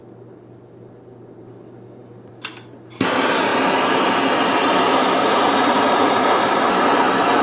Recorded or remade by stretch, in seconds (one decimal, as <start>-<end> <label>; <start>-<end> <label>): 0.0-5.2 recorded; 5.2-6.4 remade; 6.4-7.4 recorded